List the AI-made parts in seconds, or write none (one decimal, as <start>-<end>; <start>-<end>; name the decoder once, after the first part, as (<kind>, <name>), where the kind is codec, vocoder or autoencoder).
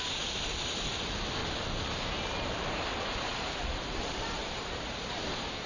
1.4-2.7 (vocoder, BigVGAN v2); 3.3-5.7